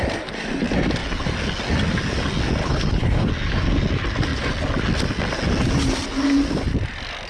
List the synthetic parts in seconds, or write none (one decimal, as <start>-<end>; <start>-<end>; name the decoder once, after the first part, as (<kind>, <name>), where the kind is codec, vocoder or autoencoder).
2.6-3.3 (codec, HILCodec)